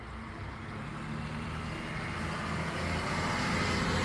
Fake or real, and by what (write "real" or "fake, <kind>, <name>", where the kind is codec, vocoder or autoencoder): real